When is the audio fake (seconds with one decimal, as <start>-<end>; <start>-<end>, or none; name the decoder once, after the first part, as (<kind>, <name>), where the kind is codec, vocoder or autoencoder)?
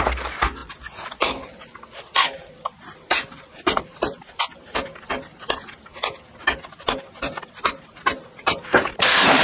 0.0-5.9 (vocoder, BigVGAN v2); 7.2-9.4